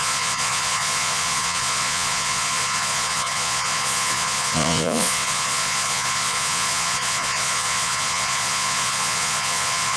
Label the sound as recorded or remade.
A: remade